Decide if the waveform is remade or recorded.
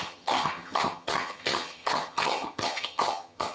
remade